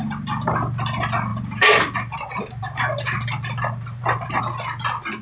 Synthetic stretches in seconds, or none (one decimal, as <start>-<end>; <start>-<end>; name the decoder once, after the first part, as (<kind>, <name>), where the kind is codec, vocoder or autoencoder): 1.3-4.4 (vocoder, BigVGAN v2)